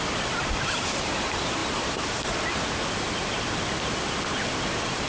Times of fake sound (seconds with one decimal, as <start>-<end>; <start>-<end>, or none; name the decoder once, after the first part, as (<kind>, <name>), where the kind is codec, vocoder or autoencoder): none